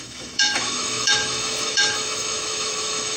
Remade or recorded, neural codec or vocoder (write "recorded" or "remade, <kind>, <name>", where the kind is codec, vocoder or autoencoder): remade, autoencoder, DAC-VAE